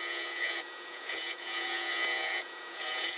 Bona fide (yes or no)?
no